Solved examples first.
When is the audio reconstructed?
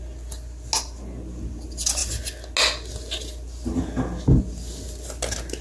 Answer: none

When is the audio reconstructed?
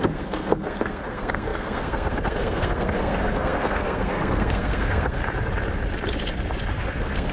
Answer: 0.0-5.2; 6.7-7.3